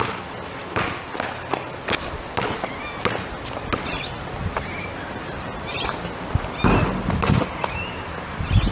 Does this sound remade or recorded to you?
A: recorded